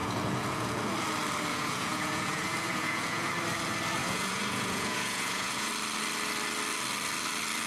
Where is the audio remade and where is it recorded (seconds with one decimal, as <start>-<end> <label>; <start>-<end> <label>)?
0.0-0.9 remade; 0.9-1.5 recorded; 1.5-3.3 remade; 3.3-4.0 recorded; 4.0-5.7 remade; 5.7-7.7 recorded